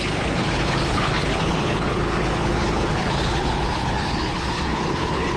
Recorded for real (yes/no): no